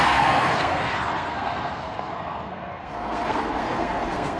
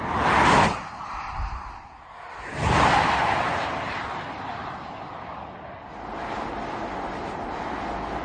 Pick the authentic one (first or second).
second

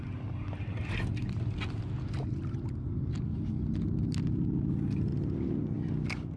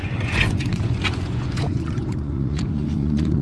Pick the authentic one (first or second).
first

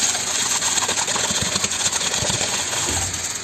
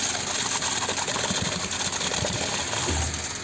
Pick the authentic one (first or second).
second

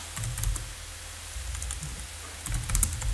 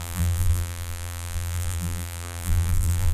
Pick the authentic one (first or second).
first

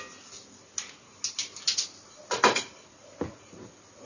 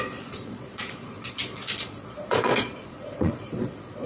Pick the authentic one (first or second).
first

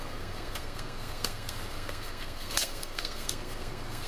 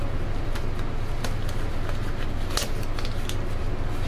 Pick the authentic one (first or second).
second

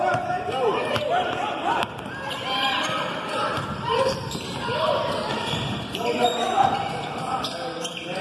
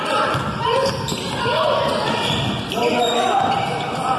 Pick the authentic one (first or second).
second